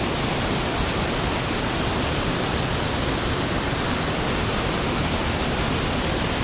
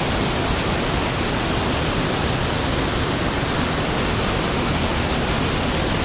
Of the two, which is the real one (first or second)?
second